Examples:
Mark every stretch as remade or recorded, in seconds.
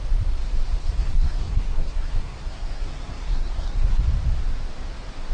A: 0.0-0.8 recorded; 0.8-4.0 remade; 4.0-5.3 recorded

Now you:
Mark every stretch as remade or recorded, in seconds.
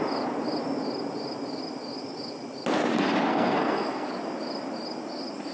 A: 0.0-3.3 recorded; 3.3-4.1 remade; 4.1-5.5 recorded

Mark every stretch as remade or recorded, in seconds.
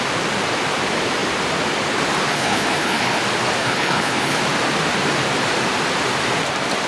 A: 0.0-2.3 recorded; 2.3-3.2 remade; 3.2-3.6 recorded; 3.6-4.4 remade; 4.4-6.9 recorded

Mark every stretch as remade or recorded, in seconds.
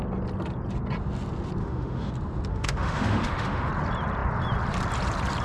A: 0.0-1.6 recorded; 1.6-2.1 remade; 2.1-2.5 recorded; 2.5-3.7 remade; 3.7-5.4 recorded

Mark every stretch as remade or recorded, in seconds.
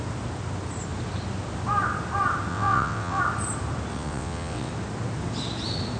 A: 0.0-2.5 recorded; 2.5-3.2 remade; 3.2-3.9 recorded; 3.9-4.7 remade; 4.7-6.0 recorded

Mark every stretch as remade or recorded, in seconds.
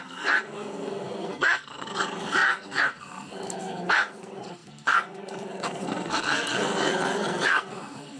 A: 0.0-8.2 remade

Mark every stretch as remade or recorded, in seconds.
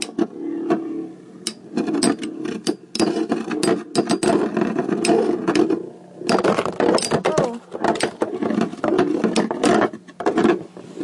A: 0.0-11.0 recorded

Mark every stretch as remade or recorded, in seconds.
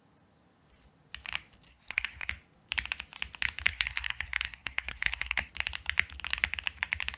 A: 0.0-1.7 recorded; 1.7-2.3 remade; 2.3-3.7 recorded; 3.7-5.5 remade; 5.5-7.2 recorded